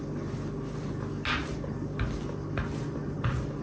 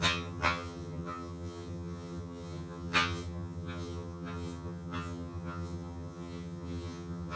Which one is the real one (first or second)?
first